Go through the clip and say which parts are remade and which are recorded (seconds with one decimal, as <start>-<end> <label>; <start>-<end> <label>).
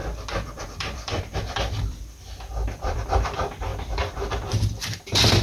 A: 0.0-0.6 recorded; 0.6-5.4 remade